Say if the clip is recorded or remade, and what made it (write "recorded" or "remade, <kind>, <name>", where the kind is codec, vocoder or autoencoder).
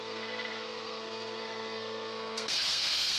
remade, codec, SNAC